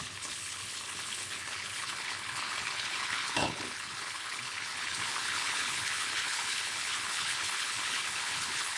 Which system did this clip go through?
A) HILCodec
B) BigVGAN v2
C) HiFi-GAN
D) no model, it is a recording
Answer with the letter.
A